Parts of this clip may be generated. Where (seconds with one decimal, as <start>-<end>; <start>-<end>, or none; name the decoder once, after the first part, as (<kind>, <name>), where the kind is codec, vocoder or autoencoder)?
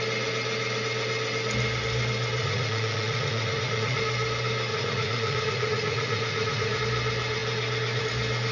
2.4-4.0 (vocoder, Vocos); 4.7-6.8